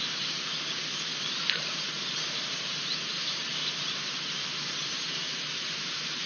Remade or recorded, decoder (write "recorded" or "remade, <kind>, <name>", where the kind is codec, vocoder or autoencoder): remade, vocoder, BigVGAN v2